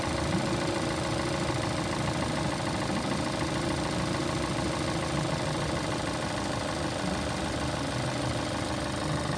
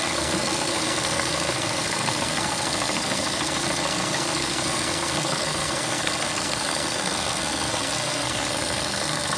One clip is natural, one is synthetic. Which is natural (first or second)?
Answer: first